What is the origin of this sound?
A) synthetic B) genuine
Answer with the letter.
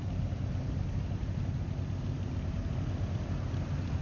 B